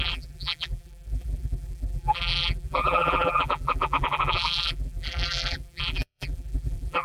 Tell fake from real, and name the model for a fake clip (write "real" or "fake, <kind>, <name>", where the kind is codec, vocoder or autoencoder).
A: fake, vocoder, BigVGAN v2